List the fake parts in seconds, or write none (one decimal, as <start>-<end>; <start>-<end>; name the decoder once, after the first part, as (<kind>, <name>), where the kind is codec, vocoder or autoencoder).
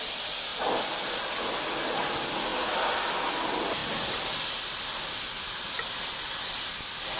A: 0.5-2.1 (vocoder, BigVGAN v2)